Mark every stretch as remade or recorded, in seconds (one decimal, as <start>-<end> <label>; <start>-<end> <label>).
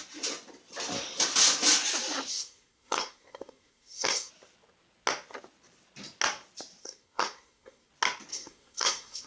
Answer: 0.0-2.3 recorded; 2.3-4.3 remade; 4.3-6.8 recorded; 6.8-7.9 remade; 7.9-8.3 recorded; 8.3-9.3 remade